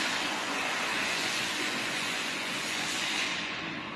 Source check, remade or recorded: remade